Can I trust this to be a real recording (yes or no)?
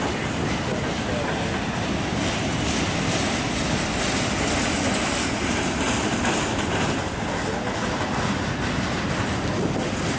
yes